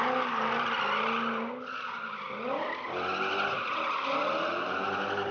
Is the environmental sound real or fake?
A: real